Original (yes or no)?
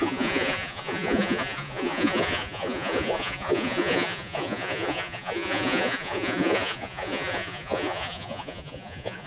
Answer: no